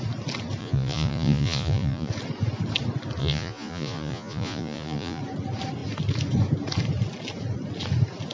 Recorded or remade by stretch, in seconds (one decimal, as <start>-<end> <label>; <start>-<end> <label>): 0.0-0.6 recorded; 0.6-2.1 remade; 2.1-3.2 recorded; 3.2-5.2 remade; 5.2-8.3 recorded